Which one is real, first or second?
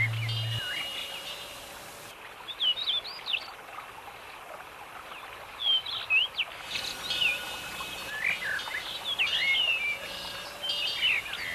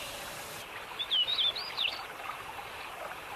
first